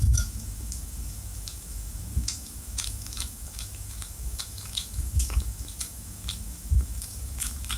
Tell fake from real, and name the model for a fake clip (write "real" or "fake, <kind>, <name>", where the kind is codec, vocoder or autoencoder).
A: fake, autoencoder, DAC-VAE